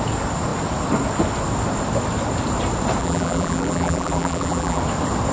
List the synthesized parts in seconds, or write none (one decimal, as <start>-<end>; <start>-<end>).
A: 3.0-4.8